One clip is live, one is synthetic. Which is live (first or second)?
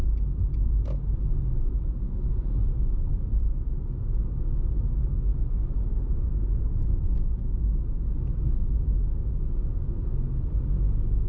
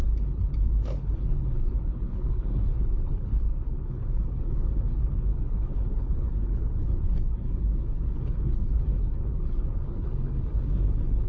first